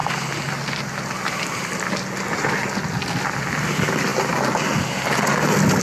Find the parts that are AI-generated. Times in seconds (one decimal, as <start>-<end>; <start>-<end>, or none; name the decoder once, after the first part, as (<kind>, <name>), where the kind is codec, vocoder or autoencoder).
none